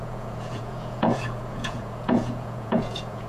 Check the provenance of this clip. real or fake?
fake